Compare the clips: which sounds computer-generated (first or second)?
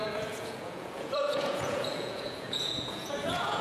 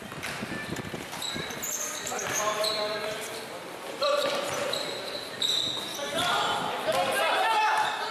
first